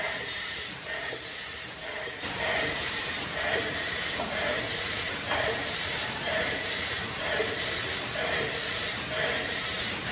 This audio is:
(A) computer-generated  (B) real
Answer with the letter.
A